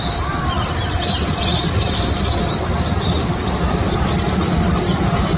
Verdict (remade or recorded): remade